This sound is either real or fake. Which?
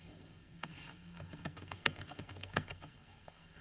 fake